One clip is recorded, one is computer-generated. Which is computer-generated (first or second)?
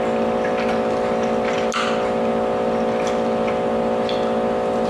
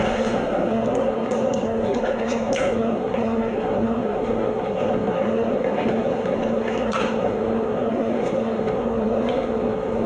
second